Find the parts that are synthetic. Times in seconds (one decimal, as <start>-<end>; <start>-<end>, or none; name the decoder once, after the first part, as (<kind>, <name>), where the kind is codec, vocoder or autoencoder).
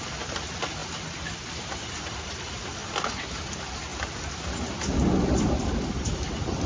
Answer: none